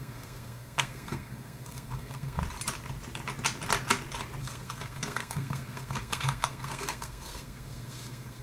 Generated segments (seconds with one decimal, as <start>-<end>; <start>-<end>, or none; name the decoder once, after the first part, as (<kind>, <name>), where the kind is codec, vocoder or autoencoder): 0.0-2.4 (codec, SNAC); 4.4-8.4